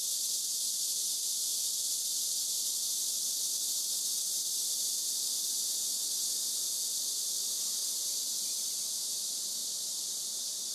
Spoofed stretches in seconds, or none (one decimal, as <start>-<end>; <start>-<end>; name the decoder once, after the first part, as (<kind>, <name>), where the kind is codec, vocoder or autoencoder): 1.5-2.2 (vocoder, BigVGAN v2); 7.8-8.7; 9.6-10.7